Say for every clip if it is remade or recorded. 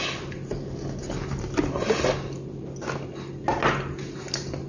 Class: recorded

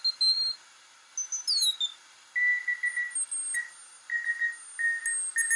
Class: recorded